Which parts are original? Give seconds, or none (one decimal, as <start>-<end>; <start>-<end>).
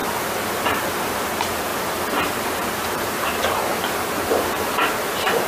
0.0-0.6; 1.7-2.3; 3.7-4.4